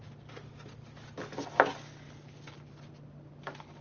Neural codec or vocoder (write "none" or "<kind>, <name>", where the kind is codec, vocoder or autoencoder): none